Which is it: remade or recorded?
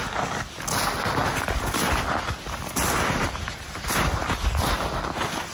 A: recorded